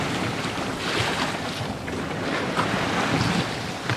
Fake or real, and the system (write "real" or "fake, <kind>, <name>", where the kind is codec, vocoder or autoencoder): real